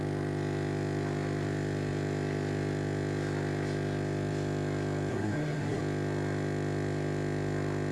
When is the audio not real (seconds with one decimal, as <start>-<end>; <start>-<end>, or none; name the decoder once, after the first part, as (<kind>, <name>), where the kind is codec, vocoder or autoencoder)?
5.1-5.8 (codec, SNAC)